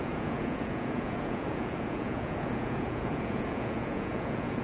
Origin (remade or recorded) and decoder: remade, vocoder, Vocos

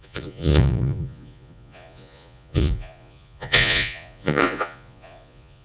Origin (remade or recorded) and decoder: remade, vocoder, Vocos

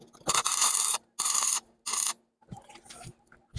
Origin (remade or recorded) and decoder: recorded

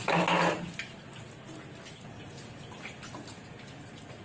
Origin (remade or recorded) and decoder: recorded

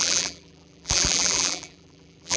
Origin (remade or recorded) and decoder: remade, vocoder, BigVGAN v2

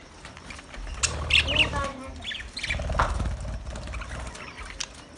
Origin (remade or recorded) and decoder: recorded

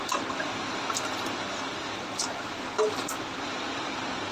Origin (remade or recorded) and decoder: recorded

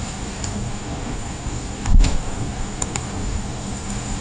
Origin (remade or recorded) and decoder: remade, codec, DAC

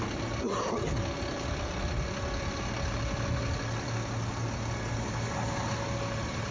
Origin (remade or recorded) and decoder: recorded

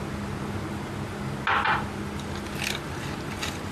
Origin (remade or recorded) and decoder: recorded